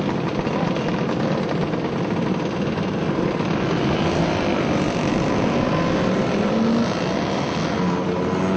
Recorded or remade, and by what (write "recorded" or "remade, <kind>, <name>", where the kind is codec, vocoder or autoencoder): recorded